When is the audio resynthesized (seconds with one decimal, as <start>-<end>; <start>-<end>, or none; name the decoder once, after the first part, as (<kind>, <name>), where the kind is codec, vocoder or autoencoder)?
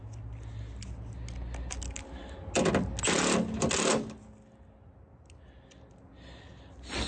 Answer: none